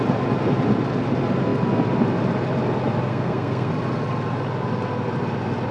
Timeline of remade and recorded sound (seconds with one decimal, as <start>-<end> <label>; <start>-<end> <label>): 0.0-3.1 recorded; 3.1-3.7 remade; 3.7-5.7 recorded